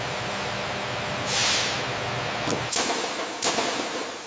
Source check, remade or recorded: recorded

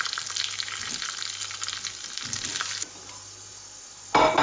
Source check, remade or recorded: recorded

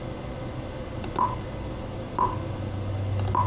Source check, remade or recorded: recorded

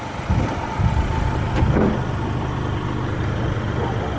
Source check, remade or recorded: recorded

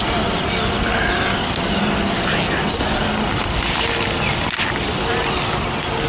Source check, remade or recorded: recorded